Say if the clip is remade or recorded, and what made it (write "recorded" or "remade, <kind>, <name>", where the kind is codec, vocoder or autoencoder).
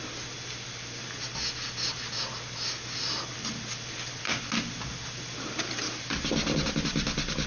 recorded